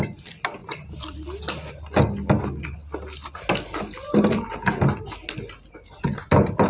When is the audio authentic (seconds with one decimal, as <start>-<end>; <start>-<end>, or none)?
0.0-0.6; 1.8-6.7